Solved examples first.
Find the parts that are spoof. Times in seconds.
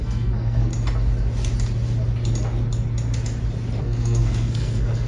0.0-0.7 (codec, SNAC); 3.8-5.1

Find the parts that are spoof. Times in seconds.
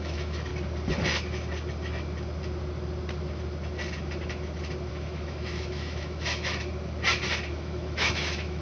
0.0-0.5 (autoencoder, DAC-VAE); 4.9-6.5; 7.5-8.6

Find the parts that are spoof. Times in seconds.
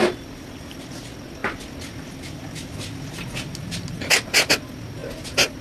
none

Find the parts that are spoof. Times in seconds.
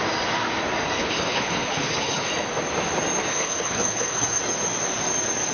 1.0-2.3 (codec, HILCodec); 3.3-4.4